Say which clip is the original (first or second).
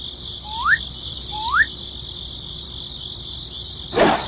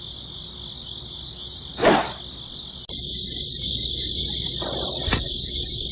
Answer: second